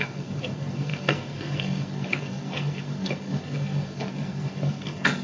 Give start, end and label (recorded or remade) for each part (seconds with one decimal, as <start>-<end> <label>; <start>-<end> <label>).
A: 0.0-5.2 remade

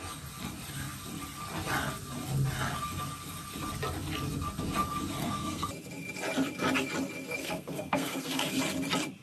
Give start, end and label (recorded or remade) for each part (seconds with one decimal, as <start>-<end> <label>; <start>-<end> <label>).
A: 0.0-5.2 recorded; 5.2-5.7 remade; 5.7-7.4 recorded; 7.4-8.6 remade; 8.6-9.2 recorded

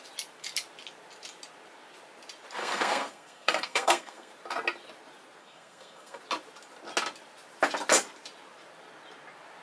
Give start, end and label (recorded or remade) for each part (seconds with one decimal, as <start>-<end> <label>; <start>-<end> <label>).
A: 0.0-2.6 recorded; 2.6-4.3 remade; 4.3-5.4 recorded; 5.4-6.2 remade; 6.2-9.6 recorded

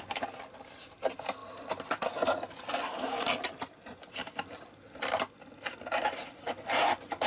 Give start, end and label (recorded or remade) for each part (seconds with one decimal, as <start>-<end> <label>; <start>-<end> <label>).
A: 0.0-7.3 recorded